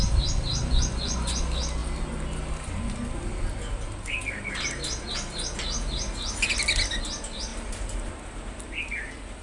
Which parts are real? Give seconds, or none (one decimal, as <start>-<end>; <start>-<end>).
0.0-0.6; 1.4-9.4